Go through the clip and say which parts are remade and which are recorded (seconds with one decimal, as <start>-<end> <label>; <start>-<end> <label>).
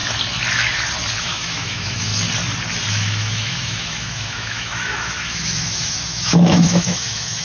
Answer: 0.0-1.2 recorded; 1.2-2.1 remade; 2.1-2.9 recorded; 2.9-7.4 remade